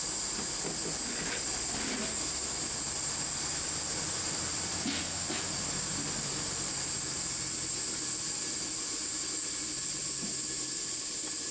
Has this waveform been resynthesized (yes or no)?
no